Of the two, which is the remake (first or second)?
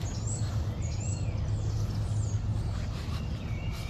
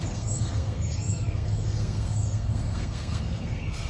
second